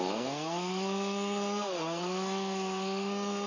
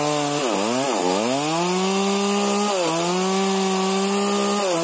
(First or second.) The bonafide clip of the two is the second